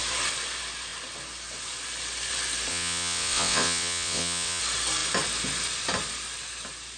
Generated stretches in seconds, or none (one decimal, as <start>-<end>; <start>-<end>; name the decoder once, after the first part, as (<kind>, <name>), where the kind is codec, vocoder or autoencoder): 2.7-4.6 (vocoder, WaveNeXt)